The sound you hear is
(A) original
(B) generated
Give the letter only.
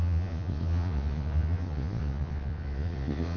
B